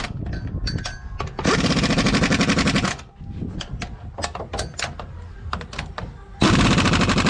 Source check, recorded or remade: recorded